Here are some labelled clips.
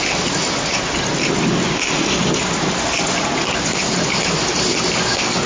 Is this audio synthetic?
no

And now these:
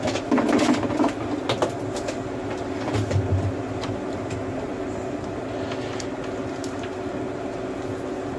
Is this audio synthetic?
no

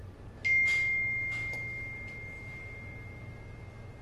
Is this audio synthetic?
no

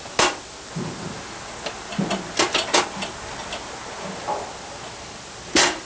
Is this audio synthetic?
no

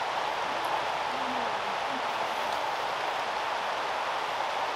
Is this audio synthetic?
no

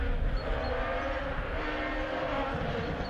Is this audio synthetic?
no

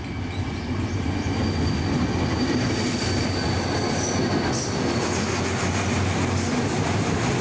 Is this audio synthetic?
no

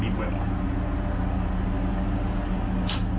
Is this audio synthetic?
no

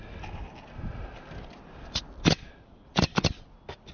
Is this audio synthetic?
no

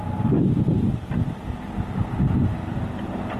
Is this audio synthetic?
no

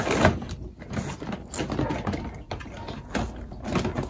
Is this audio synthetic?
no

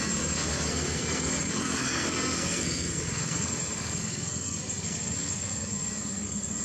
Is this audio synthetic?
yes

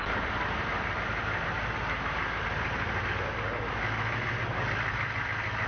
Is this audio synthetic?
no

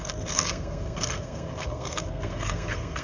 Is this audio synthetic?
yes